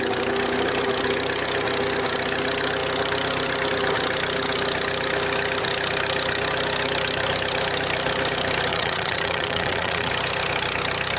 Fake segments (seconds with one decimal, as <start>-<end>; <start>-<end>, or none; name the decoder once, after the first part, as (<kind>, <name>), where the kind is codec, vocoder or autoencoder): 8.7-10.1 (vocoder, Vocos)